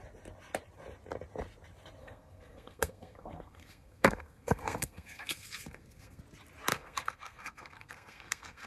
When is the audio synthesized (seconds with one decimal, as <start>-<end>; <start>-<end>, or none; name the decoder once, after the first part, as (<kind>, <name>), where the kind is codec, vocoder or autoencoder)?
2.0-6.2 (codec, SNAC); 6.7-8.7